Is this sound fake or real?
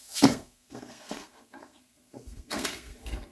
fake